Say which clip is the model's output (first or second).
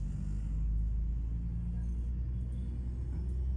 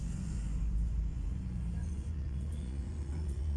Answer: second